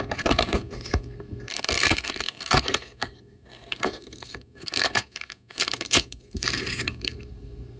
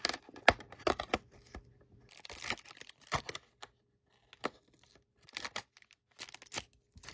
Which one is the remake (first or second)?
first